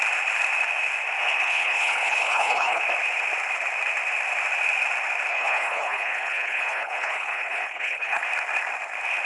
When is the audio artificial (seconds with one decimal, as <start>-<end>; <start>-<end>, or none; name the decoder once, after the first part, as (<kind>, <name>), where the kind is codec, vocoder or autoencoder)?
1.4-2.8 (codec, HILCodec); 5.3-8.2